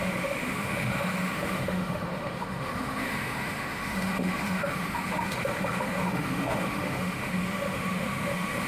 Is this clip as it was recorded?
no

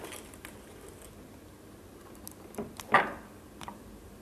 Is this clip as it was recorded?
yes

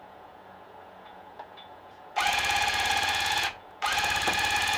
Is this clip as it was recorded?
no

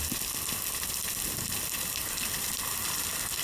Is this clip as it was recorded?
yes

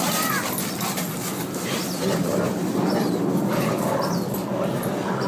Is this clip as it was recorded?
yes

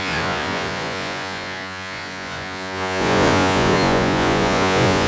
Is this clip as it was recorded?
no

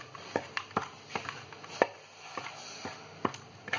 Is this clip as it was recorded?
yes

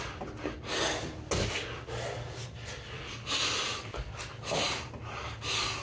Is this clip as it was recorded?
yes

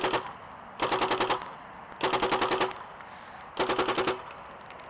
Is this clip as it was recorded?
yes